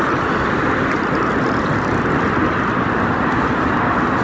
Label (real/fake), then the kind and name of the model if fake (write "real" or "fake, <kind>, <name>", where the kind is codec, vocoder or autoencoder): real